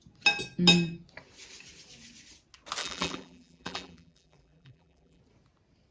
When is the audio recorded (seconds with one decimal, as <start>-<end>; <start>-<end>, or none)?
0.0-2.8; 5.2-5.9